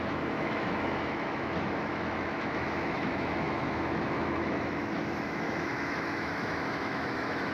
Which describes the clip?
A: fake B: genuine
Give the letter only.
A